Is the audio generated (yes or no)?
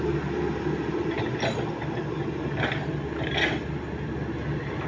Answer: no